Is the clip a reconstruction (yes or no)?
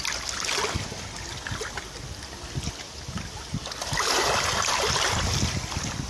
no